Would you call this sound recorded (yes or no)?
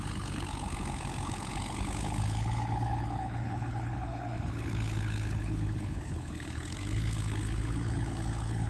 no